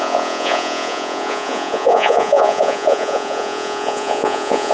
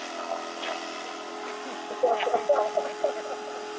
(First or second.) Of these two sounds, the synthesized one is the first